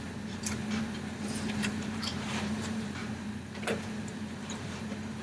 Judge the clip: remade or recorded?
remade